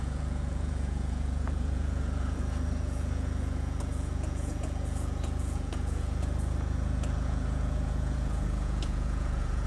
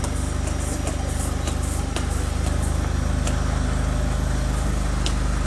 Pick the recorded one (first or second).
second